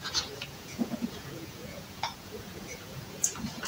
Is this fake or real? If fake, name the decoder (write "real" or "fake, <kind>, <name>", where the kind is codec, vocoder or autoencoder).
fake, vocoder, Vocos